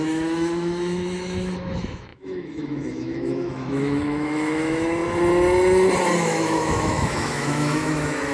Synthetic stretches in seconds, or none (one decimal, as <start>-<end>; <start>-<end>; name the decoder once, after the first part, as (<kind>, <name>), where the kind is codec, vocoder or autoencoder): 0.0-5.0 (autoencoder, DAC-VAE); 6.2-8.3